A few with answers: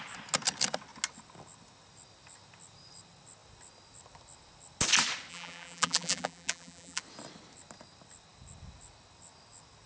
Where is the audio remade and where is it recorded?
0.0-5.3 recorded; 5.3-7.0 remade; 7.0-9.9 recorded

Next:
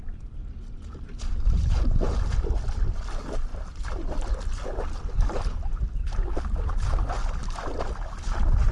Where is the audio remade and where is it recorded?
0.0-8.7 recorded

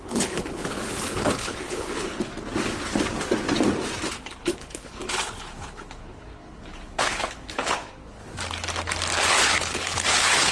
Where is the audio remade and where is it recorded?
0.0-2.3 remade; 2.3-4.1 recorded; 4.1-8.2 remade; 8.2-9.3 recorded; 9.3-10.5 remade

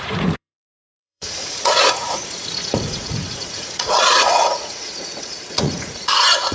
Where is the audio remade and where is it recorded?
0.0-6.5 remade

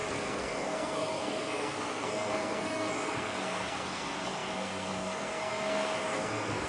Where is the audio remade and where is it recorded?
0.0-6.7 remade

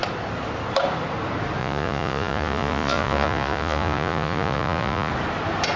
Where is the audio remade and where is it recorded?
0.0-1.6 recorded; 1.6-5.1 remade; 5.1-5.8 recorded